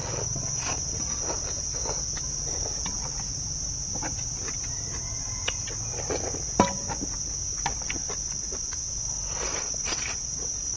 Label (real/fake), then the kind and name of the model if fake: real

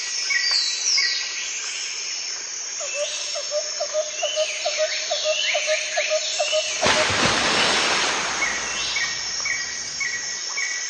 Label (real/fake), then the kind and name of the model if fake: real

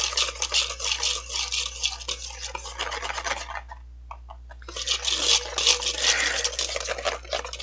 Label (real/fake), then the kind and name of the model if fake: real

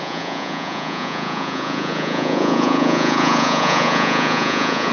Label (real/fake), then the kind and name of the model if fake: fake, vocoder, Vocos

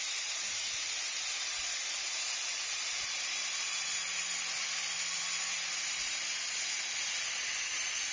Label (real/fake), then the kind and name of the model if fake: real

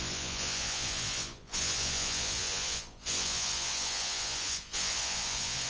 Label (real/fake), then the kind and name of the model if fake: fake, vocoder, Vocos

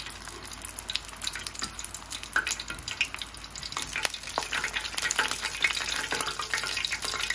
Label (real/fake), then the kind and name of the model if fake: real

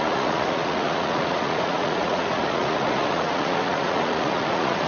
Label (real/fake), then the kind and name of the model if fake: fake, vocoder, Vocos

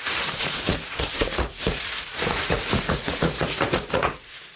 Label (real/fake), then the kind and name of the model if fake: fake, vocoder, Vocos